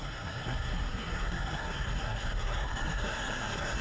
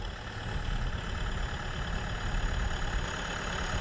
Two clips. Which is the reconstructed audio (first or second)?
first